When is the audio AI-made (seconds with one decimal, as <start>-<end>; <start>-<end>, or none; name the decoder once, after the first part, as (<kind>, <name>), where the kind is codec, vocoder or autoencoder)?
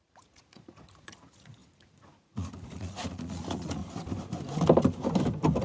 0.0-3.8 (vocoder, Vocos)